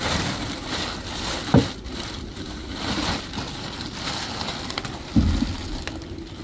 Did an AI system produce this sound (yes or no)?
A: no